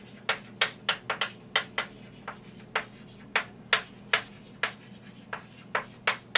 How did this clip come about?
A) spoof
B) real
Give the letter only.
B